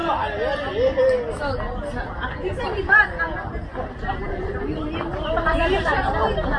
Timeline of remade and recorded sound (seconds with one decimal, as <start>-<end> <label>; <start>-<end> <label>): 0.0-3.5 recorded; 3.5-6.1 remade; 6.1-6.6 recorded